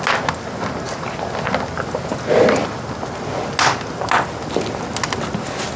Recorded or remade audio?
recorded